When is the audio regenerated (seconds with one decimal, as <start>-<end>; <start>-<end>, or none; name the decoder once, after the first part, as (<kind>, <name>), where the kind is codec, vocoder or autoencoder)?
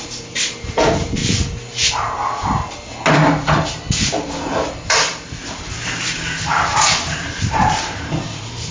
0.0-1.2 (vocoder, BigVGAN v2); 5.7-8.7